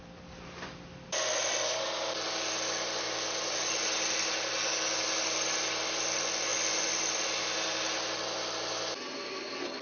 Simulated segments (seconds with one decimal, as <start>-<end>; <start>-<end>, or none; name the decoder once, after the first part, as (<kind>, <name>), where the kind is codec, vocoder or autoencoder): none